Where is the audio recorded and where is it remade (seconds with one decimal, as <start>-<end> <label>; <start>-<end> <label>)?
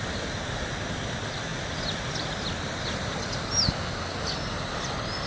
0.0-5.3 recorded